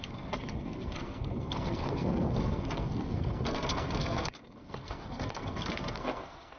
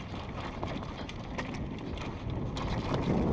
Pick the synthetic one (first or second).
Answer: first